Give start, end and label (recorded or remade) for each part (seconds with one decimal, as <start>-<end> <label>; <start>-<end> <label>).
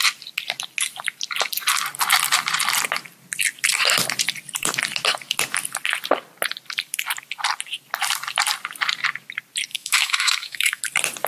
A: 0.0-9.7 recorded; 9.7-10.8 remade; 10.8-11.3 recorded